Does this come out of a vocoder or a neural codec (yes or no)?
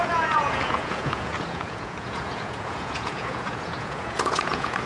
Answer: yes